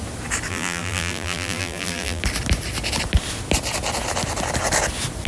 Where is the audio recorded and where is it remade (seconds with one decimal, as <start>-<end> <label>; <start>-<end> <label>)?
0.0-0.5 recorded; 0.5-2.2 remade; 2.2-5.3 recorded